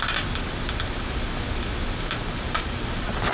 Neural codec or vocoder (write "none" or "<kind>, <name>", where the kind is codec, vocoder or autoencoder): none